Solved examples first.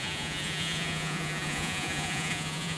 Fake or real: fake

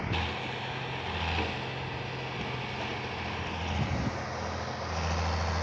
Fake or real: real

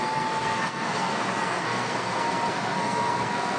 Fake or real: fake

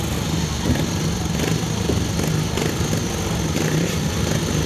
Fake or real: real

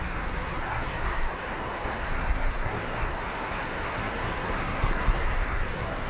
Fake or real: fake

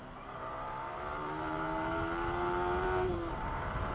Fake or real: fake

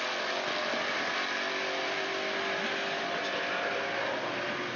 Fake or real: real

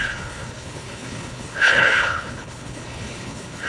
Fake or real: fake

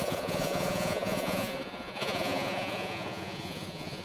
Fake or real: fake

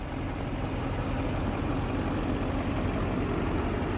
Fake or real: real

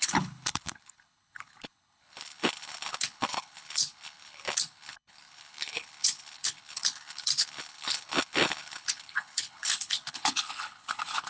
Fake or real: fake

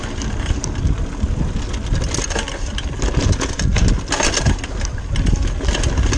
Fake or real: real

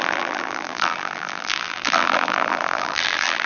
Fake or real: fake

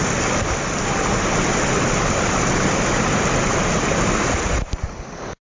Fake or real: real